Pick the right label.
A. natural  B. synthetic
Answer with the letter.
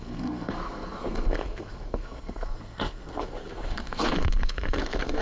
B